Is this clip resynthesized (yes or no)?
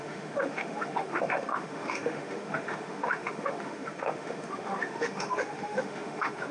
yes